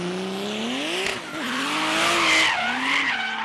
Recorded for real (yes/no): yes